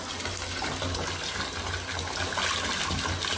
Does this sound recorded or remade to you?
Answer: recorded